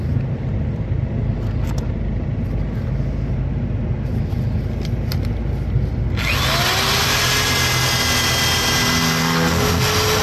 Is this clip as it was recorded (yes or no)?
yes